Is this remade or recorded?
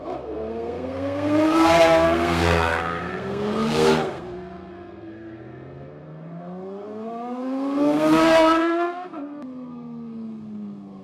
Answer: remade